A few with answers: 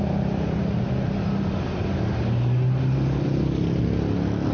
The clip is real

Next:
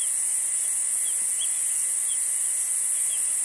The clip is real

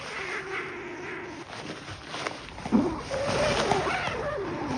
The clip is real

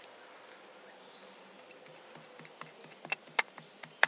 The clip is real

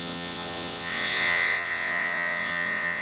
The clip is fake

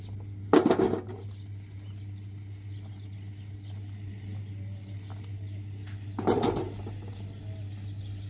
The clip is real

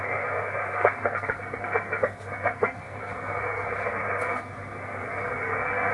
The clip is fake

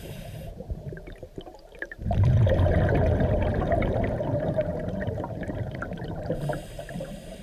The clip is fake